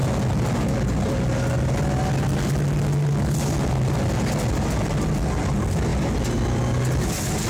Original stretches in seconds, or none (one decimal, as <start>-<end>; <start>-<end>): 0.0-7.5